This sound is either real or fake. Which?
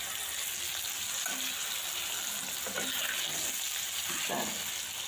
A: real